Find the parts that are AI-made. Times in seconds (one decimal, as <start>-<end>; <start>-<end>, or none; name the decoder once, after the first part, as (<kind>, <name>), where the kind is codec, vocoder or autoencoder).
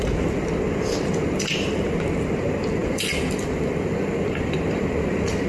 2.8-5.1 (vocoder, BigVGAN v2)